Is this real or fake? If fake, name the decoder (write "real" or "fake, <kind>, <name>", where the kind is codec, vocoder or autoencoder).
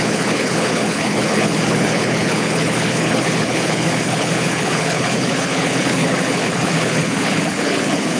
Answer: fake, codec, HILCodec